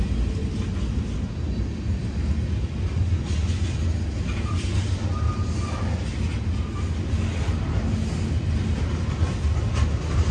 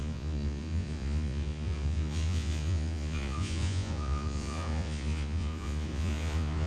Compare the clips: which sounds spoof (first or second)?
second